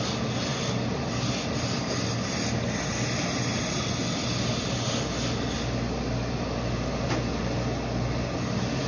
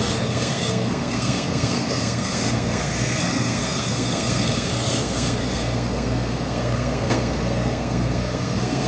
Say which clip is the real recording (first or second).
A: first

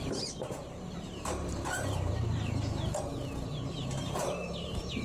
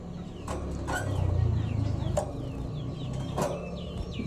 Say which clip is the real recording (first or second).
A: second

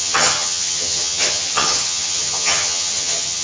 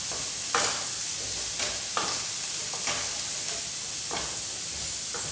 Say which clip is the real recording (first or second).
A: second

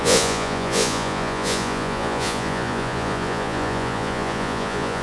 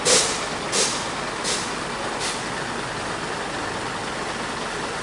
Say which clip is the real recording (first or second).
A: second